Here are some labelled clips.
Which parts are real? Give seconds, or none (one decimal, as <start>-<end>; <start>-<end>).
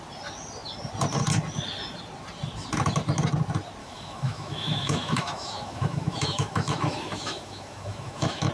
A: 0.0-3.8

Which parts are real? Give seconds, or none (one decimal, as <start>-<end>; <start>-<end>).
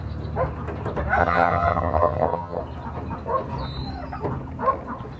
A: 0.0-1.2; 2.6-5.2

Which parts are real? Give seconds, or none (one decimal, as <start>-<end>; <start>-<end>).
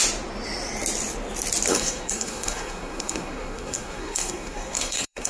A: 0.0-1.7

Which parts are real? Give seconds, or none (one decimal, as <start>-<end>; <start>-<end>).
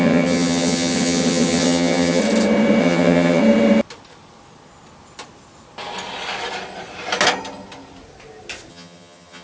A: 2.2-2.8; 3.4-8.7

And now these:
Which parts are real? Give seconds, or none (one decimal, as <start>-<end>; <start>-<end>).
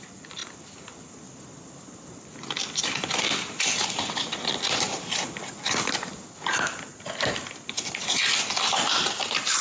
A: 0.0-0.4; 3.7-9.6